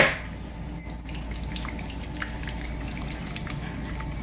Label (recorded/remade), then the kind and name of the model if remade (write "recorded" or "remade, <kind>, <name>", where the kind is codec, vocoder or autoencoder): recorded